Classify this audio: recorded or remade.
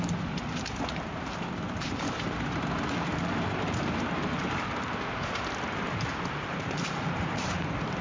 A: remade